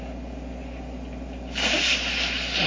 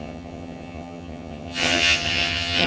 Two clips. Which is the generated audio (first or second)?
second